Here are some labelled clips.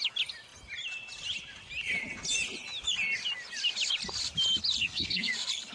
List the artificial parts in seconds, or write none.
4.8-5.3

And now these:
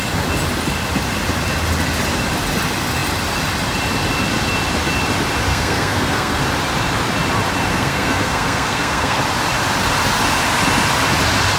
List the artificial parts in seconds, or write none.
5.5-6.4; 7.7-9.2